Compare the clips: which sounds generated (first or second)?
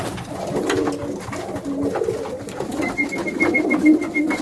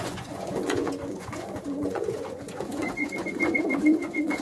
second